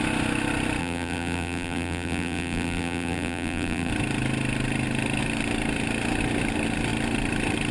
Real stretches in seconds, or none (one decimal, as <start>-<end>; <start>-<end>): 0.0-0.8; 3.9-7.7